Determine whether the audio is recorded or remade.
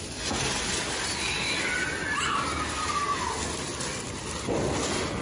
recorded